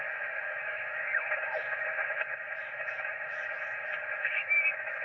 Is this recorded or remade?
remade